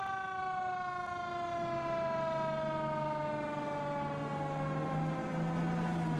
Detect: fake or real real